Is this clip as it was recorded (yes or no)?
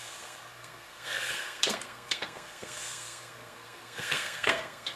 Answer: no